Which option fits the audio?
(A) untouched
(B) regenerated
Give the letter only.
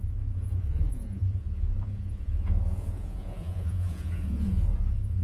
B